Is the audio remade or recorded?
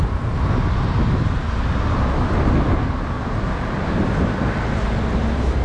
recorded